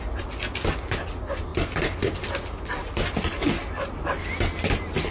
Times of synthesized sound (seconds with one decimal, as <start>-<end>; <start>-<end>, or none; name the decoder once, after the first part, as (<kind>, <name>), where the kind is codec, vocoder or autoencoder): none